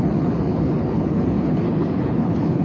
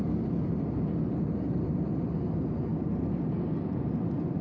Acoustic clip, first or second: second